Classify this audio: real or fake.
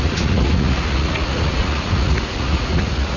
fake